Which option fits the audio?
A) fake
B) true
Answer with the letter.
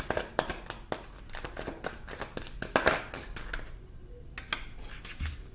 B